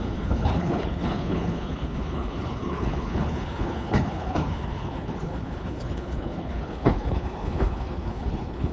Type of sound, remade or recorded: remade